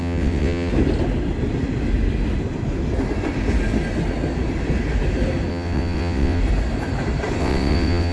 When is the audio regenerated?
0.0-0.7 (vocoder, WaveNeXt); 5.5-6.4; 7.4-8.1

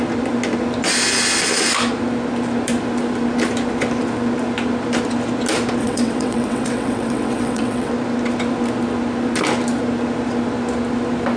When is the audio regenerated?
5.8-7.9 (vocoder, WaveNeXt)

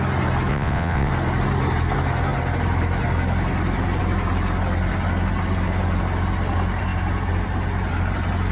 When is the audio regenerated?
0.5-1.1 (vocoder, WaveNeXt)

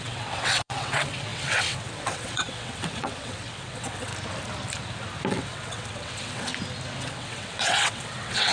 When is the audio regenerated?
0.0-4.1 (vocoder, WaveNeXt); 5.3-6.5; 7.0-8.5

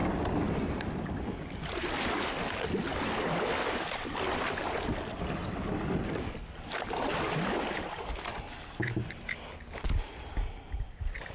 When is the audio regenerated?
none

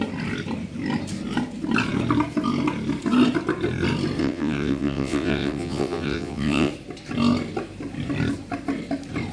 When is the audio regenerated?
4.2-6.7 (vocoder, WaveNeXt)

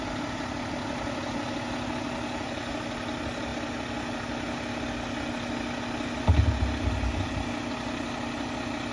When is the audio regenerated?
none